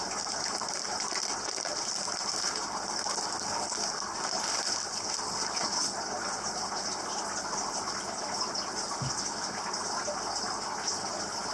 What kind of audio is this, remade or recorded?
recorded